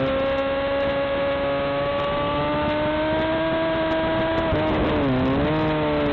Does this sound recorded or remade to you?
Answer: recorded